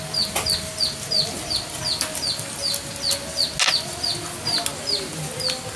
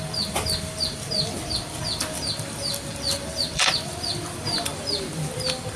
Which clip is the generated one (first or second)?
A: second